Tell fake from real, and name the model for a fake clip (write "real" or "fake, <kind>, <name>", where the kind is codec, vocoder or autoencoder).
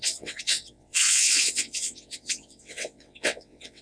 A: fake, vocoder, WaveNeXt